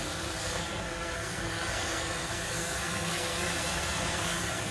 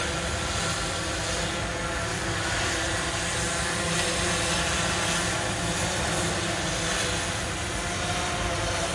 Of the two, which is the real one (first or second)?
second